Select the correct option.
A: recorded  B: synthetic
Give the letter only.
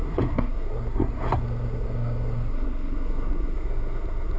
B